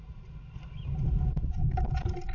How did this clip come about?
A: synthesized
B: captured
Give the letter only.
B